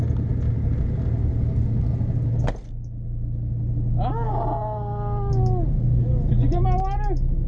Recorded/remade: recorded